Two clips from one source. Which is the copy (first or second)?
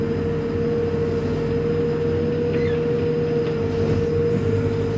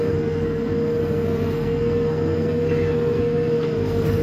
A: second